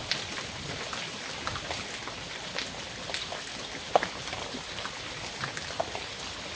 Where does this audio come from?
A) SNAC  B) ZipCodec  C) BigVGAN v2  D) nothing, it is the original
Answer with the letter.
D